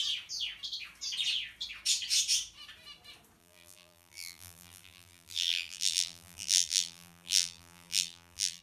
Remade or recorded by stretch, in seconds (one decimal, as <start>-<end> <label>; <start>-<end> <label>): 0.0-3.4 recorded; 3.4-8.6 remade